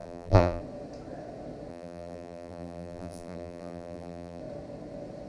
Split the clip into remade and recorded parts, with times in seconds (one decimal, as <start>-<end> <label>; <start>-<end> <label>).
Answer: 0.0-0.6 remade; 0.6-1.7 recorded; 1.7-4.4 remade; 4.4-5.3 recorded